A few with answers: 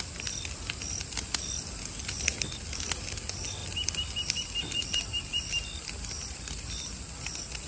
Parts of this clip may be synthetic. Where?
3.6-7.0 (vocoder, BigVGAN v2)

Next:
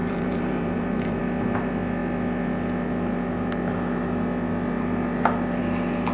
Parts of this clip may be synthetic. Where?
0.0-1.2 (vocoder, BigVGAN v2)

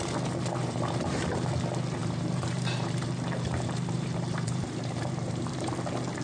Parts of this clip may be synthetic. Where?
0.6-1.2 (vocoder, BigVGAN v2); 2.0-5.7

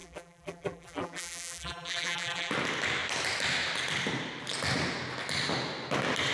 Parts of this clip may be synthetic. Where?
0.0-2.5 (vocoder, BigVGAN v2)

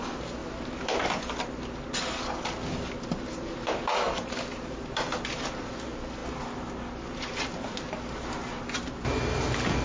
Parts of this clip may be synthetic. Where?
0.4-1.2 (vocoder, BigVGAN v2)